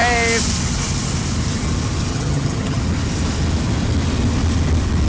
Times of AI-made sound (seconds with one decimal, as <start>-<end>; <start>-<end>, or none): 2.1-2.8